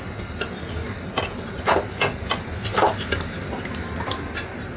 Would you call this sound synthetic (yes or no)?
no